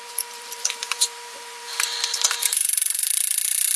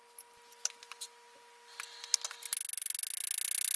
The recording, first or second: second